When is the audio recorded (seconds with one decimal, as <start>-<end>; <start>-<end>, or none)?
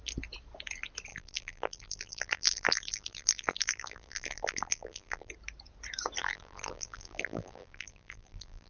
0.0-1.1; 5.3-6.2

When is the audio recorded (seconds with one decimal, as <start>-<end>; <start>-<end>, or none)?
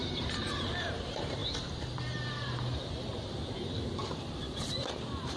0.0-5.4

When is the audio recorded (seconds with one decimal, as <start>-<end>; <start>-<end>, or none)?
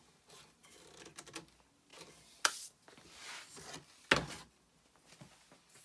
0.0-5.8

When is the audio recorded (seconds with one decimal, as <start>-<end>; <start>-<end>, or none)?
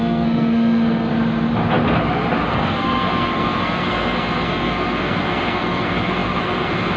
1.1-2.5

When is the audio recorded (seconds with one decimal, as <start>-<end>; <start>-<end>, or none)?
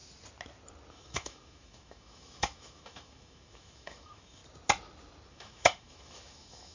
0.0-0.9; 4.4-5.3